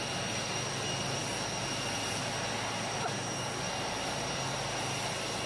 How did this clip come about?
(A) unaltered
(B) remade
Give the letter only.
A